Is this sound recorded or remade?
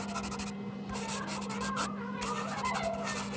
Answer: recorded